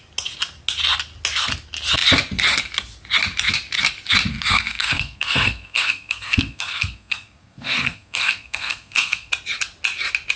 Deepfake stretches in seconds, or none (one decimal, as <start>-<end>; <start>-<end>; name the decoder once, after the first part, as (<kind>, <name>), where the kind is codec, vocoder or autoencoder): 4.3-9.3 (codec, SNAC)